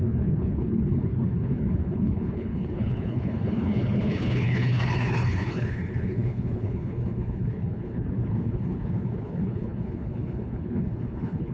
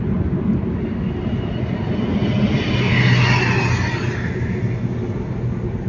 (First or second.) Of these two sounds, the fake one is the first